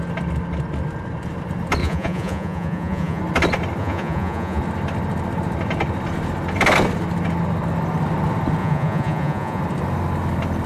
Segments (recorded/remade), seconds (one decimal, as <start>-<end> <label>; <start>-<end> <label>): 0.0-1.8 recorded; 1.8-3.2 remade; 3.2-3.8 recorded; 3.8-4.6 remade; 4.6-8.6 recorded; 8.6-9.6 remade; 9.6-10.7 recorded